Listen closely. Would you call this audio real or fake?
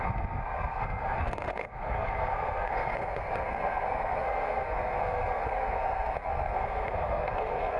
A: fake